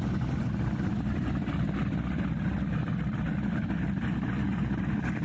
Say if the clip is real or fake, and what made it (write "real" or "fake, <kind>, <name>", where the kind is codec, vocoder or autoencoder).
real